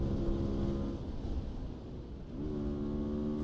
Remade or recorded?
recorded